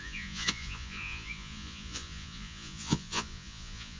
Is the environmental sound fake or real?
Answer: fake